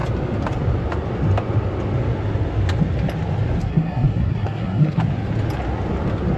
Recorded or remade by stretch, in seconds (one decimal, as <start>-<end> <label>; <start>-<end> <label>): 0.0-3.6 recorded; 3.6-5.0 remade; 5.0-6.4 recorded